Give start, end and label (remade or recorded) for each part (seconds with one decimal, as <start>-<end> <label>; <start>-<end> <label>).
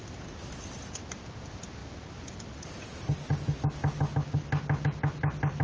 0.0-5.6 recorded